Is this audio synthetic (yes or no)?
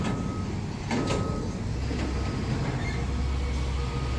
no